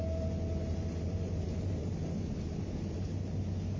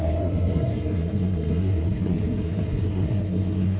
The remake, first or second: second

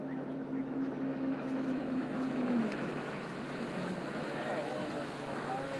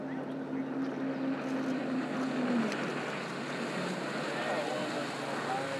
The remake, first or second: first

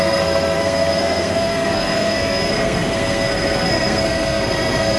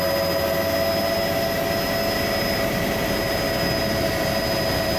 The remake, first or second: first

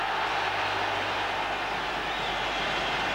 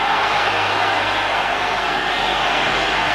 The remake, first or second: second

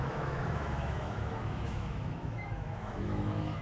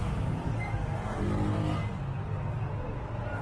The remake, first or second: first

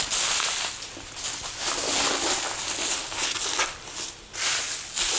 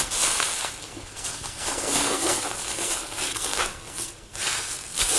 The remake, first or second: second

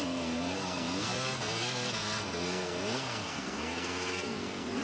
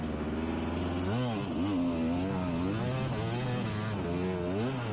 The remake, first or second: first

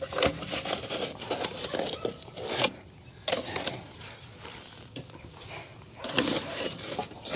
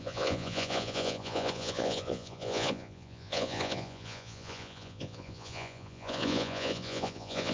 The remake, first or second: second